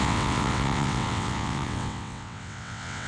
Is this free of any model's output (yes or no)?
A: no